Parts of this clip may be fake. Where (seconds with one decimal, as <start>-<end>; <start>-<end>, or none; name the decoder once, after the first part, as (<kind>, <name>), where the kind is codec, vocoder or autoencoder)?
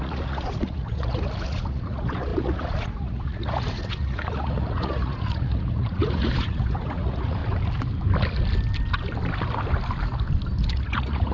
0.0-7.4 (vocoder, Vocos); 10.7-11.3